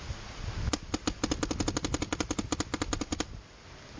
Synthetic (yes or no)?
no